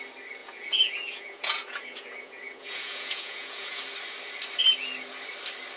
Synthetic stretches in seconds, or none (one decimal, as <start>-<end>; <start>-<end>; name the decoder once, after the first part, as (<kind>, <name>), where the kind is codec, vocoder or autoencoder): 0.4-3.8 (vocoder, Vocos)

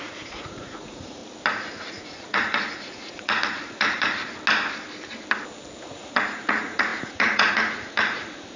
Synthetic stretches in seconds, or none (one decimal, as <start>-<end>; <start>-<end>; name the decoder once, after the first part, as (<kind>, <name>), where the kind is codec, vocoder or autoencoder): 0.0-1.2 (vocoder, Vocos); 1.9-4.2; 5.8-8.6

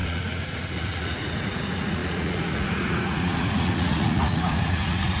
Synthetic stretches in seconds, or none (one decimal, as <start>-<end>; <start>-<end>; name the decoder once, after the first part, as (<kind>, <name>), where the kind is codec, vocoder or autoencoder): 0.0-5.2 (vocoder, Vocos)

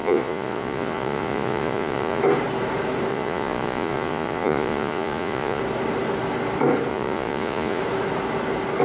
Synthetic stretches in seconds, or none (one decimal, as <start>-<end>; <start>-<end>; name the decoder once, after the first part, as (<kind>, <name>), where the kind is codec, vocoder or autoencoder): 0.0-2.2 (vocoder, Vocos); 3.1-5.6; 6.9-7.8

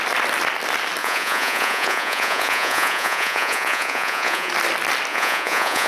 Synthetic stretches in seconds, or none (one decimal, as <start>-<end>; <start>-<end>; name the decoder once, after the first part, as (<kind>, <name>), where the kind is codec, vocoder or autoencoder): 1.0-4.5 (vocoder, Vocos); 5.1-5.9